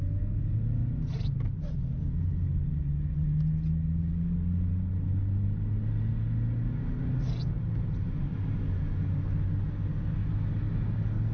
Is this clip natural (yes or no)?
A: yes